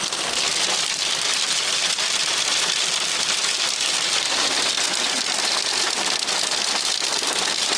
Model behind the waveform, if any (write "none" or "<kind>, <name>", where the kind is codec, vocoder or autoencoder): none